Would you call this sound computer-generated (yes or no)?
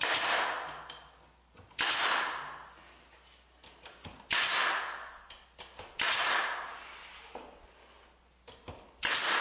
no